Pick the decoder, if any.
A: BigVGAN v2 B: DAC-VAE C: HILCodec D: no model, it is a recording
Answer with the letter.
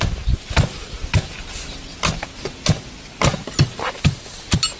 D